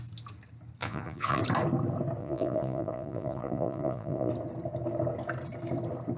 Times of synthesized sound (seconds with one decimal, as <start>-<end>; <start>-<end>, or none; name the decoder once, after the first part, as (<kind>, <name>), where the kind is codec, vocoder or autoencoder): 0.8-1.4 (vocoder, Vocos); 2.2-4.3